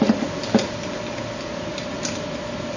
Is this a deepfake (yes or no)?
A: no